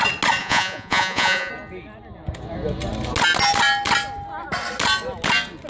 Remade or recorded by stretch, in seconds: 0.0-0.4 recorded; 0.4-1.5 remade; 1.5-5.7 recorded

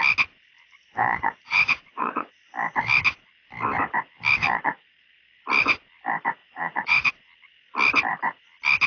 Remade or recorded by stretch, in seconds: 0.0-0.9 recorded; 0.9-2.5 remade; 2.5-4.4 recorded; 4.4-5.1 remade; 5.1-6.4 recorded; 6.4-7.1 remade; 7.1-8.9 recorded

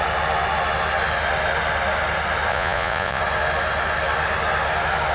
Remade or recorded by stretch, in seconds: 0.0-2.5 recorded; 2.5-3.2 remade; 3.2-5.1 recorded

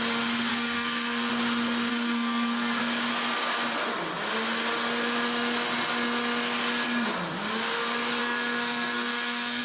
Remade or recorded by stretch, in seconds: 0.0-0.5 recorded; 0.5-1.3 remade; 1.3-1.9 recorded; 1.9-2.8 remade; 2.8-8.2 recorded; 8.2-9.6 remade